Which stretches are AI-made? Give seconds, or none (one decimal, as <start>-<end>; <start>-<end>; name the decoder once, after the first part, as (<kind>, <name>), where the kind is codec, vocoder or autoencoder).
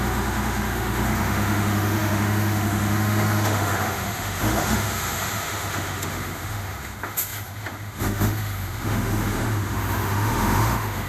0.0-11.1 (autoencoder, DAC-VAE)